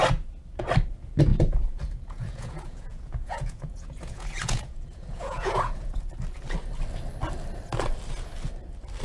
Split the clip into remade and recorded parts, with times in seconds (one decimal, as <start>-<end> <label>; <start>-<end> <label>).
0.0-1.3 recorded; 1.3-6.0 remade; 6.0-9.0 recorded